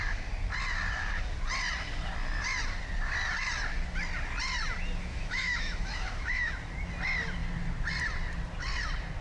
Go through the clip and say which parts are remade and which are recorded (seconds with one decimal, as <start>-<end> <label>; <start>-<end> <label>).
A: 0.0-5.1 recorded; 5.1-6.5 remade; 6.5-9.2 recorded